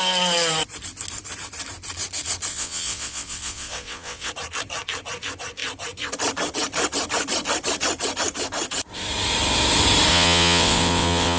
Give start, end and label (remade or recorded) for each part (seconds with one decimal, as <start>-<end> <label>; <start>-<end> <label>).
0.0-2.5 recorded; 2.5-4.3 remade; 4.3-10.1 recorded; 10.1-11.4 remade